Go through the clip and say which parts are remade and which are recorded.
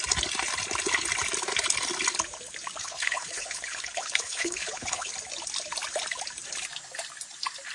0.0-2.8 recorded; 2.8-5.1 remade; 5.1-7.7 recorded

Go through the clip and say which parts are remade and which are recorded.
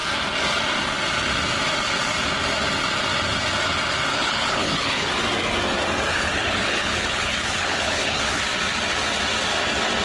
0.0-4.1 recorded; 4.1-5.1 remade; 5.1-6.1 recorded; 6.1-8.4 remade; 8.4-10.0 recorded